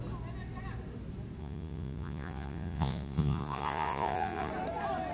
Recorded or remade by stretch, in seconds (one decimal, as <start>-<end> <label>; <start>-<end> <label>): 0.0-1.4 recorded; 1.4-4.5 remade; 4.5-5.1 recorded